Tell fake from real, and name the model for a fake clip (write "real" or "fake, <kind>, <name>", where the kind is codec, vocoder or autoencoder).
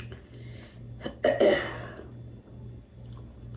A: real